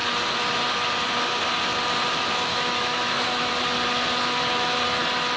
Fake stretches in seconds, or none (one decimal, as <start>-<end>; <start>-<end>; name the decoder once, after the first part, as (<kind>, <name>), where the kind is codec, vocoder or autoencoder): 2.5-3.5 (autoencoder, DAC-VAE)